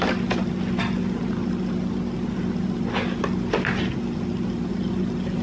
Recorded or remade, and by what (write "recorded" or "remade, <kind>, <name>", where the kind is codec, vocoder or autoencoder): recorded